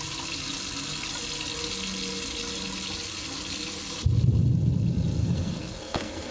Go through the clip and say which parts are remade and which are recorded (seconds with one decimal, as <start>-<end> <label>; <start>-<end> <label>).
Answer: 0.0-5.2 recorded; 5.2-6.3 remade